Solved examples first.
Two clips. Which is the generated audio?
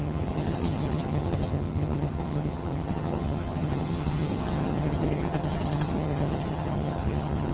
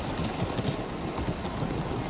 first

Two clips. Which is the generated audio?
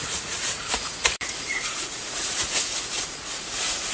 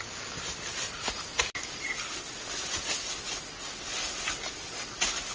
first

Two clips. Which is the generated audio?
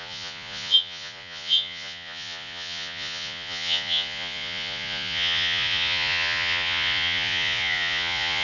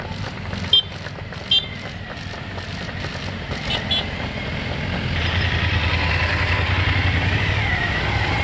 first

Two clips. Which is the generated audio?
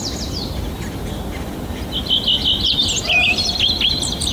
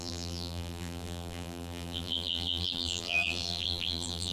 second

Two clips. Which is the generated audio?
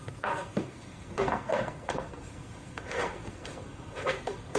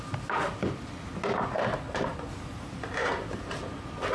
first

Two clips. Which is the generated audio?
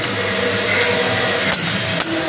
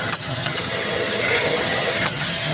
second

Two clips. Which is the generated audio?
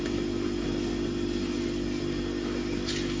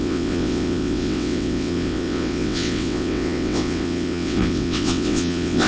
second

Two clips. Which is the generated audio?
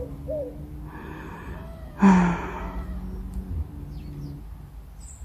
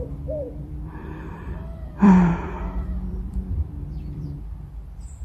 second